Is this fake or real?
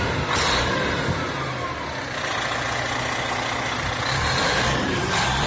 real